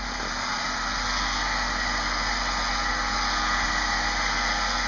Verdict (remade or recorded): recorded